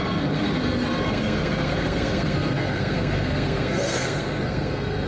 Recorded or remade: remade